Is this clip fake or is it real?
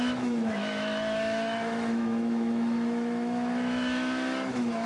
fake